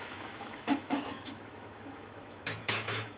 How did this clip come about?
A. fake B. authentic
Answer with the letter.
A